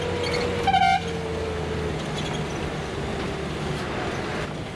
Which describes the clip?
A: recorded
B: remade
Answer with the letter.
A